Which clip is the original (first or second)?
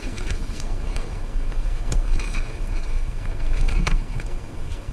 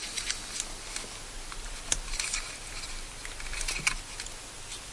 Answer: second